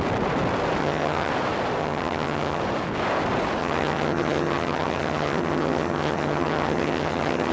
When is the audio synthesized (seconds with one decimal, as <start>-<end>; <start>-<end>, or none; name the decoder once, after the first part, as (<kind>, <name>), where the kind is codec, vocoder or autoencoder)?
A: 0.8-1.3 (vocoder, HiFi-GAN); 1.8-2.6; 3.6-7.5